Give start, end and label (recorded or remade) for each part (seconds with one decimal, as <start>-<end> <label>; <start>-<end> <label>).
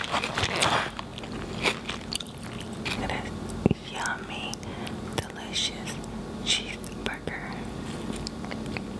0.0-9.0 recorded